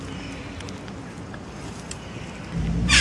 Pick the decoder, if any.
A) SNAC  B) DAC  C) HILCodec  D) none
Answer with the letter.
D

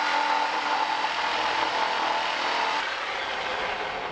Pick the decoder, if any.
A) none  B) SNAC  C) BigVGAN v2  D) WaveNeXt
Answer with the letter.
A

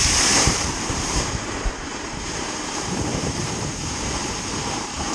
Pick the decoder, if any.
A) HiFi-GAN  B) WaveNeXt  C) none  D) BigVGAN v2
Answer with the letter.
D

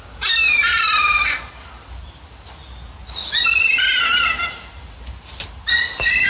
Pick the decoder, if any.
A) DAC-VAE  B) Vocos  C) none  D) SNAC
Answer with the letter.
C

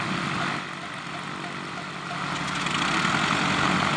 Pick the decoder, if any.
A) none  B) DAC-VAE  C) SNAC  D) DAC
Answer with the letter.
A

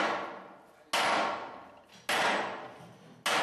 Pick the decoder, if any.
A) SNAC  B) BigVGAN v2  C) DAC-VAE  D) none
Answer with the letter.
D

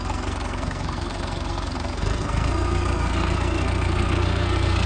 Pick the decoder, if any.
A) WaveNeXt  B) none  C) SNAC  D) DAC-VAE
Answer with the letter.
C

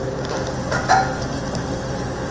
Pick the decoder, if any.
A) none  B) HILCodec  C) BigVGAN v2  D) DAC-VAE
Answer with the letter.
A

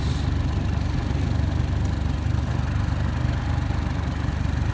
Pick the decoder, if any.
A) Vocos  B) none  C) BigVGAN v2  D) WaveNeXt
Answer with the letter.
B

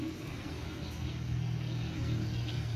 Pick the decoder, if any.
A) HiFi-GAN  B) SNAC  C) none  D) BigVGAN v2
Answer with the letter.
B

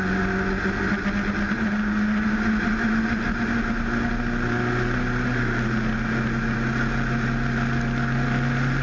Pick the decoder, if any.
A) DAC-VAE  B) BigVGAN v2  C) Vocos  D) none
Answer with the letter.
D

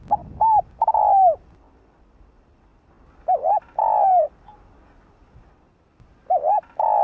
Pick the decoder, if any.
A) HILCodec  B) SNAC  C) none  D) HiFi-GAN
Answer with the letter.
C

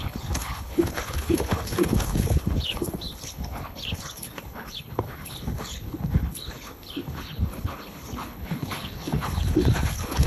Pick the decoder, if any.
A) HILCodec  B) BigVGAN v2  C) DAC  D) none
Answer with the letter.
A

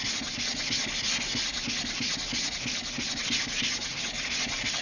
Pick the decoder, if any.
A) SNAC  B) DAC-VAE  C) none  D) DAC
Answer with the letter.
C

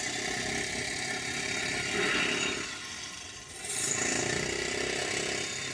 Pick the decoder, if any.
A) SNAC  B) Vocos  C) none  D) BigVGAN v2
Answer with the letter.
C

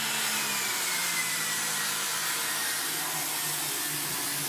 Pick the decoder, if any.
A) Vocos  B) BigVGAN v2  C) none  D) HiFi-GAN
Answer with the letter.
C